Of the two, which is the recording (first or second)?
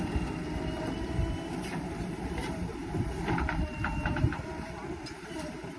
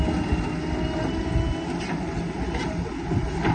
second